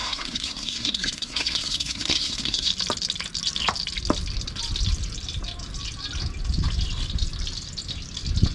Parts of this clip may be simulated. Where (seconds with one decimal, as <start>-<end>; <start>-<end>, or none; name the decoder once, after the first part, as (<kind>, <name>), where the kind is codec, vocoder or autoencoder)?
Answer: 0.0-2.7 (codec, SNAC)